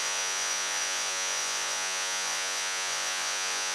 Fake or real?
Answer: fake